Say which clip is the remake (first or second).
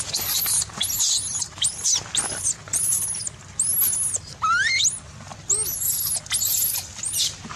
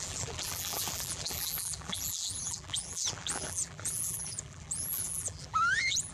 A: second